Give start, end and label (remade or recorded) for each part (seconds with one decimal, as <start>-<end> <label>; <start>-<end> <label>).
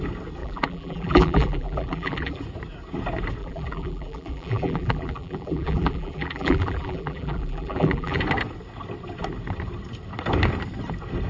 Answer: 0.0-0.4 recorded; 0.4-2.4 remade; 2.4-3.4 recorded; 3.4-8.2 remade; 8.2-11.3 recorded